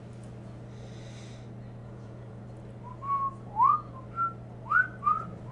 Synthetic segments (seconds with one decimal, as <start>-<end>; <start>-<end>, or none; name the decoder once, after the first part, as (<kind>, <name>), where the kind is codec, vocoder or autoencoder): 1.8-2.4 (vocoder, Vocos)